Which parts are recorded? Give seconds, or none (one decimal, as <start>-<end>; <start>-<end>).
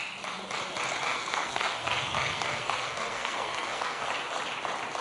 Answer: 0.0-1.1; 4.1-5.0